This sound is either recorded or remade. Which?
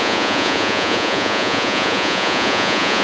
remade